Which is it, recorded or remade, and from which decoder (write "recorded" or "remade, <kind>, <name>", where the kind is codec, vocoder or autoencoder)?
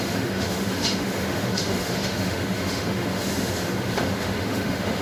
remade, autoencoder, DAC-VAE